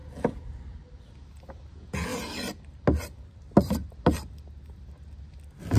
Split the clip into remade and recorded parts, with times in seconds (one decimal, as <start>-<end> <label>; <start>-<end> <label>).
0.0-1.7 recorded; 1.7-2.1 remade; 2.1-5.8 recorded